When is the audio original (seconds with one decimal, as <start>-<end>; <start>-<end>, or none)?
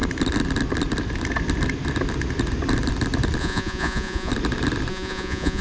0.0-3.4; 4.3-4.9